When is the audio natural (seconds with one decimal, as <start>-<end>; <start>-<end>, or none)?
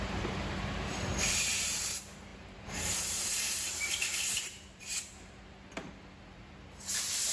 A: none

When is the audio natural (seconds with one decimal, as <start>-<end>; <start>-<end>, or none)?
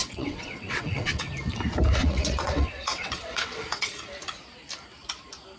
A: 1.3-2.0; 3.9-5.6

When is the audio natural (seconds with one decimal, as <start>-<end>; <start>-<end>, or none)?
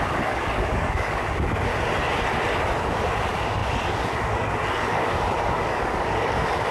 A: 1.7-2.8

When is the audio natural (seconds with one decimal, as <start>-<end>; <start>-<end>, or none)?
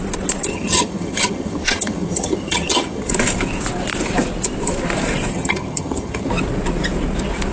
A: 0.0-0.5; 3.1-5.3; 6.3-7.5